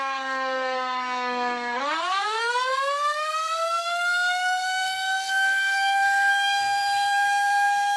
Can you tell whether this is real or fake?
fake